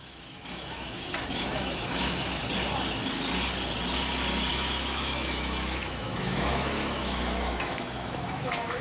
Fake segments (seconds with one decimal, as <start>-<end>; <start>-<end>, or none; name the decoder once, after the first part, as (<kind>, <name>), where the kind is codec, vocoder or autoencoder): 0.0-2.4 (autoencoder, DAC-VAE); 4.5-8.8